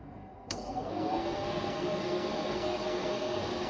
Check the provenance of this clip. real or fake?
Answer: fake